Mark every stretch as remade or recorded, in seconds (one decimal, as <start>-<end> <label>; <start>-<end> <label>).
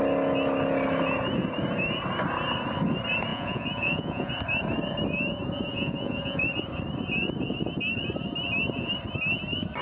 0.0-3.3 recorded; 3.3-4.3 remade; 4.3-5.7 recorded; 5.7-6.4 remade; 6.4-9.8 recorded